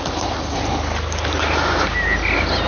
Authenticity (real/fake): real